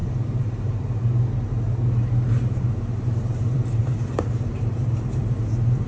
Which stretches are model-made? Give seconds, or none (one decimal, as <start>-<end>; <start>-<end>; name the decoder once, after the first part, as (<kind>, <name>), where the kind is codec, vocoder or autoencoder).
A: 0.0-0.7 (vocoder, BigVGAN v2); 2.3-5.9